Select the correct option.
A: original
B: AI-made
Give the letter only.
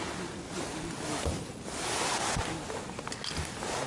A